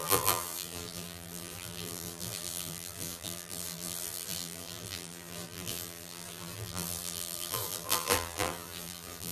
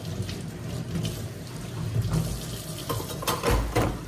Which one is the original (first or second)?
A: second